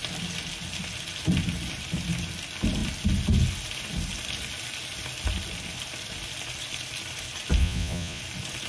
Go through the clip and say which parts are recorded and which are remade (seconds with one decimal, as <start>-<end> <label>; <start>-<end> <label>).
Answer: 0.0-7.6 recorded; 7.6-8.2 remade; 8.2-8.7 recorded